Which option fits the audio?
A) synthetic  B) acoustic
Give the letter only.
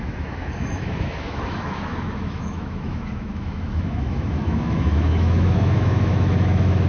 A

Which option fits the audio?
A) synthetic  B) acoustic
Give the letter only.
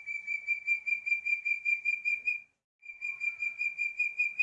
B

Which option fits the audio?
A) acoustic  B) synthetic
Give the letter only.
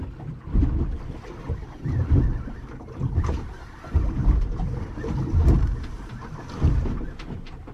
A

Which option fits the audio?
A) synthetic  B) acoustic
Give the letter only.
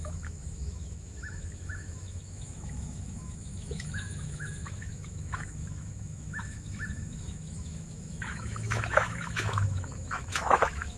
A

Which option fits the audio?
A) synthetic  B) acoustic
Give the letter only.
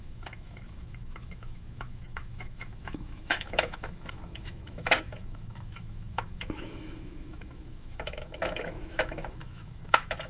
A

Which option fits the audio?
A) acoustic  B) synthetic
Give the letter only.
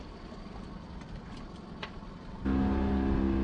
A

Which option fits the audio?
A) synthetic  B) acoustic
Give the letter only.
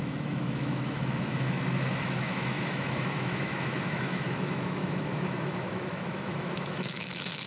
A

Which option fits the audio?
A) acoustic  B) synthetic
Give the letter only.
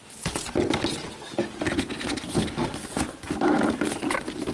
A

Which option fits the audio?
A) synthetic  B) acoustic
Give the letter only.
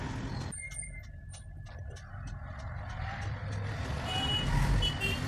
B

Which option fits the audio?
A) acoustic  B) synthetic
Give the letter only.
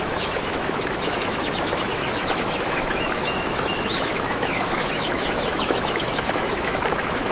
B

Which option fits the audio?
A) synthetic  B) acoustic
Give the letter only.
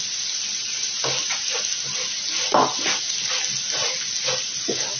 B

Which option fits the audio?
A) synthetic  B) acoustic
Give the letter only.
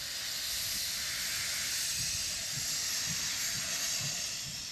B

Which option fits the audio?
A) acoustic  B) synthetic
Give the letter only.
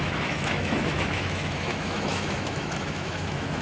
B